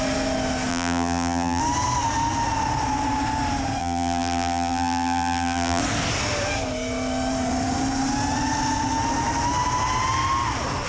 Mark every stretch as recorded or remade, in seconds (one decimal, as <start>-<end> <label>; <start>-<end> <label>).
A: 0.0-0.7 recorded; 0.7-1.6 remade; 1.6-3.8 recorded; 3.8-5.8 remade; 5.8-10.9 recorded